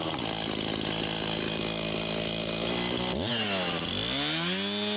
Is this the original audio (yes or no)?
yes